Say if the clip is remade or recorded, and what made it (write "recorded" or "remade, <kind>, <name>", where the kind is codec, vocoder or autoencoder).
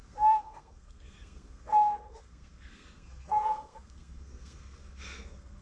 remade, codec, SNAC